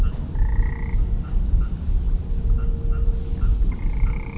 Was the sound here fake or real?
real